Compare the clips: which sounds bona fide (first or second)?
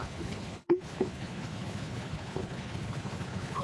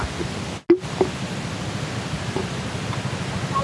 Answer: second